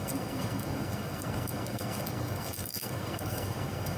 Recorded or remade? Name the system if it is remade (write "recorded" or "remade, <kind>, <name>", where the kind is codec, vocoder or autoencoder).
remade, codec, SNAC